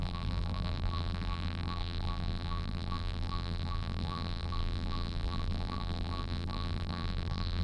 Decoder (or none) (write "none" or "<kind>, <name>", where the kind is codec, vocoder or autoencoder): vocoder, BigVGAN v2